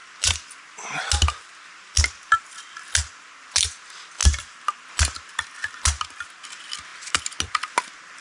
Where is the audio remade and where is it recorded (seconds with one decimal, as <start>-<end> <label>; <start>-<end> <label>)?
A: 0.0-8.2 recorded